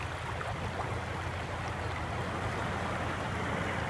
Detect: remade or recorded recorded